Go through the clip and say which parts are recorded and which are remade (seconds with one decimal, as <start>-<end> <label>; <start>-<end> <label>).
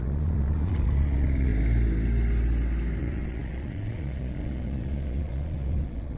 0.0-1.5 remade; 1.5-3.0 recorded; 3.0-6.2 remade